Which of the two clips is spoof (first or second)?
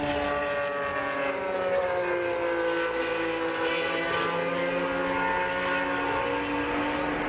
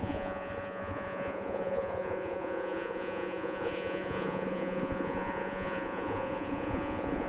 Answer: second